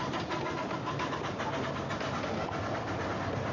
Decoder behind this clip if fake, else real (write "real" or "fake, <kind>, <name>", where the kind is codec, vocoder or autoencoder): real